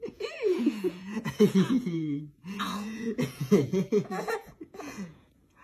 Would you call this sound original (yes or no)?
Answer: no